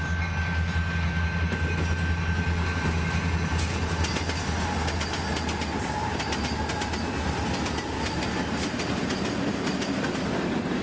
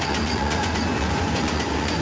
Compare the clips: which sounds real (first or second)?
first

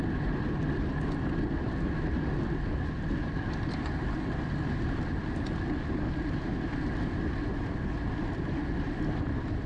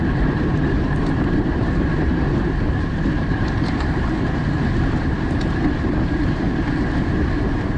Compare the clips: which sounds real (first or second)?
first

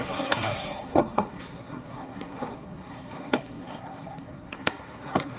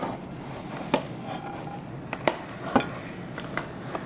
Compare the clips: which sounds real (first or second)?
second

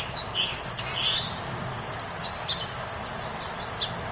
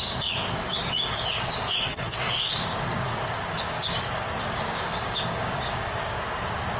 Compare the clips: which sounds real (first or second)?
first